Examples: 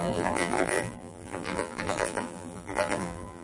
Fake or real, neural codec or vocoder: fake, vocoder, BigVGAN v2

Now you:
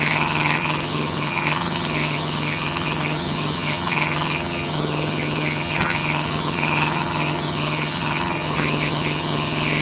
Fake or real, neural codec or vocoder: fake, vocoder, HiFi-GAN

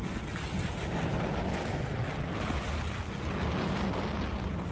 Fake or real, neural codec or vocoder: real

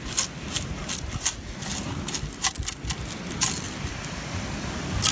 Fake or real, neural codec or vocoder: real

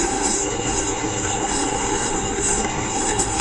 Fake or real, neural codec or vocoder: fake, codec, SNAC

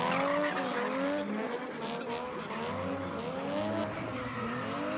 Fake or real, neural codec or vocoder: real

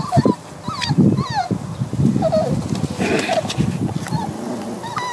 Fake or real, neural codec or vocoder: real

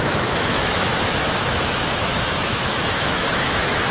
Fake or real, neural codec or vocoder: fake, autoencoder, DAC-VAE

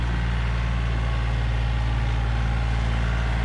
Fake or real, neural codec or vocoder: real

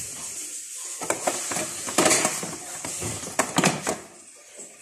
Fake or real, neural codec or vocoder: real